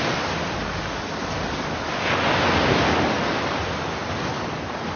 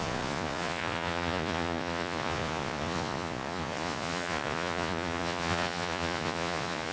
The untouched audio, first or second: first